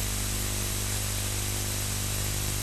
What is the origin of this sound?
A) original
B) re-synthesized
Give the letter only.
B